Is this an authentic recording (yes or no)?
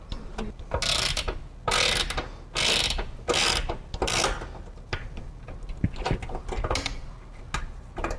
yes